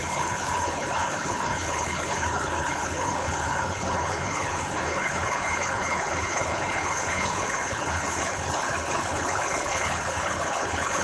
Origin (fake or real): fake